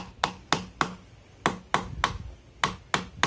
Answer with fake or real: real